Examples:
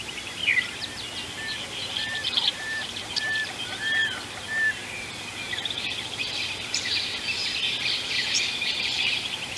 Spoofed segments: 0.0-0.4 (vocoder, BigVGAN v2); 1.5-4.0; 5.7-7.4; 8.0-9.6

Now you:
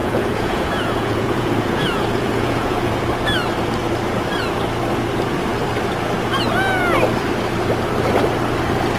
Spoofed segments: 0.0-2.9 (vocoder, Vocos)

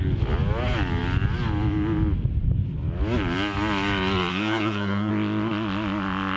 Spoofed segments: 4.3-5.1 (codec, SNAC)